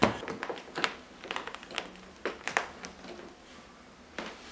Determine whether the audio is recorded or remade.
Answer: recorded